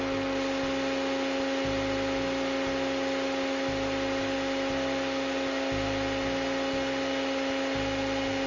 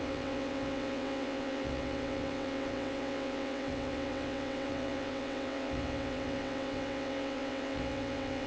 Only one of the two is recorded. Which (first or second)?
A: first